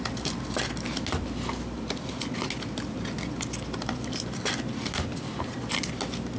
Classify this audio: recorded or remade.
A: recorded